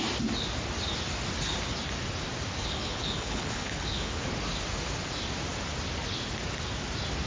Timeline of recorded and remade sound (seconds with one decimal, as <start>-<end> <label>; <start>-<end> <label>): 0.0-2.6 recorded; 2.6-4.3 remade; 4.3-7.3 recorded